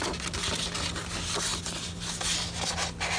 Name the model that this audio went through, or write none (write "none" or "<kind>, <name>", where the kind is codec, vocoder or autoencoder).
none